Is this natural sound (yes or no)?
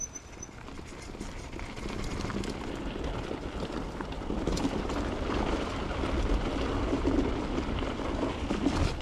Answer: yes